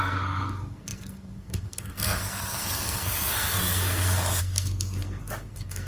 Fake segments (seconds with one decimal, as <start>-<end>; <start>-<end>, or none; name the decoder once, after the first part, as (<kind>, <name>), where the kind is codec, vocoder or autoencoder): 0.0-5.9 (codec, SNAC)